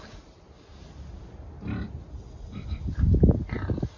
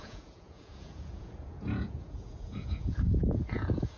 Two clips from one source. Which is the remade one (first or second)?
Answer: second